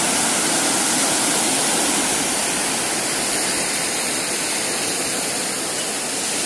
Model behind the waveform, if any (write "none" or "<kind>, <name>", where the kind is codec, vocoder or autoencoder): none